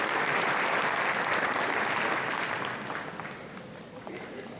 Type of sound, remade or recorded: recorded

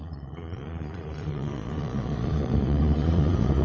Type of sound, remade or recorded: remade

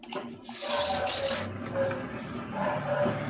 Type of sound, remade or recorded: recorded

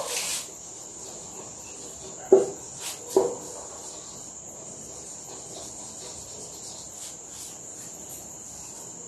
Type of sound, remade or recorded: recorded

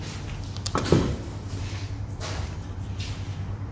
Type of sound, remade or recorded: recorded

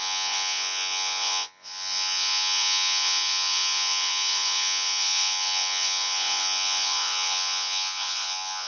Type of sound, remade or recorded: remade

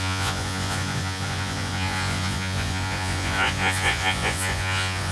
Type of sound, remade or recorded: remade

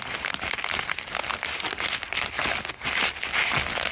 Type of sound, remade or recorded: recorded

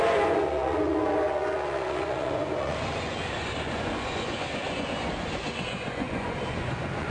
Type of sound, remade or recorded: remade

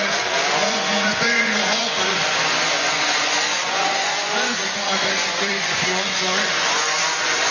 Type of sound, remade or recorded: remade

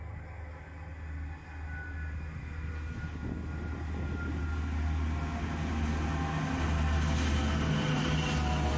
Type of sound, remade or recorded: recorded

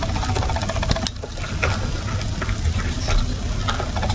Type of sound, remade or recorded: recorded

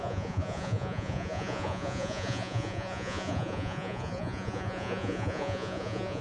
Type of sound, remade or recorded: remade